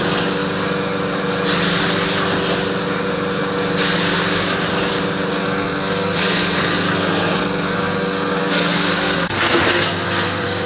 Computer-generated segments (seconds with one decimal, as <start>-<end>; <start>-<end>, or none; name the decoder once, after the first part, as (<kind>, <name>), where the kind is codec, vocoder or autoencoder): 5.3-10.7 (codec, SNAC)